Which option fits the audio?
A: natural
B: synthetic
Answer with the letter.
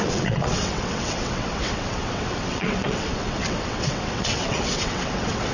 B